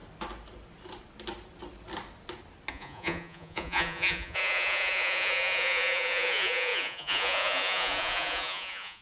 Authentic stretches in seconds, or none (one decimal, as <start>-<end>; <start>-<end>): 0.0-2.7